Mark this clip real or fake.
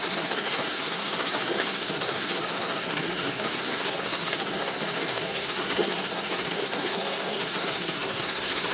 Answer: fake